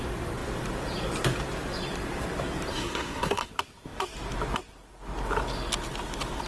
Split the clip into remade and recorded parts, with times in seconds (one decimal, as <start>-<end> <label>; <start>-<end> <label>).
0.0-2.7 recorded; 2.7-3.5 remade; 3.5-6.5 recorded